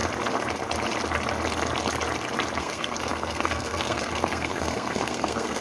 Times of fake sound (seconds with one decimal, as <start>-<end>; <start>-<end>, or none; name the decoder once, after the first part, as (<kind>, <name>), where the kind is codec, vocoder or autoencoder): 2.6-5.6 (codec, SNAC)